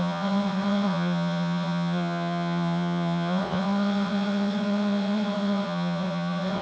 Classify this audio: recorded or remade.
remade